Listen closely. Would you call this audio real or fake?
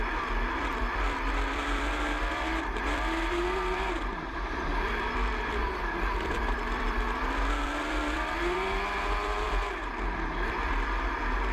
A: fake